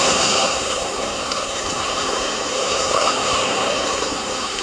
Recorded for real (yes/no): no